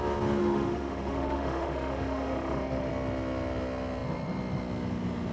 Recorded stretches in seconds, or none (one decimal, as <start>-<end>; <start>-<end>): 0.0-0.4; 2.9-5.3